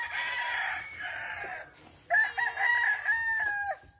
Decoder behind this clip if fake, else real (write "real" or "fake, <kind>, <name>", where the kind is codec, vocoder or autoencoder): real